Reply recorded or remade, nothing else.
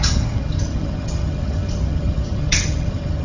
remade